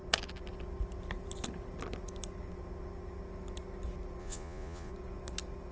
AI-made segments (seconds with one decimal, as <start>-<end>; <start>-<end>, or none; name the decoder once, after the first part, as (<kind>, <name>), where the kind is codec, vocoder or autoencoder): 4.2-4.9 (vocoder, Vocos)